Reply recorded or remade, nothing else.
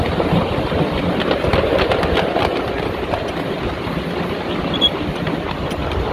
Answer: recorded